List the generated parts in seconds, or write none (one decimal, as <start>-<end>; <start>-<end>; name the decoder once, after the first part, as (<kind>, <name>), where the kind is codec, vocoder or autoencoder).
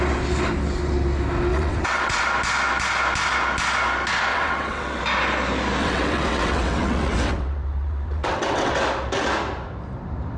1.5-2.2 (vocoder, WaveNeXt); 4.3-5.0; 5.8-8.7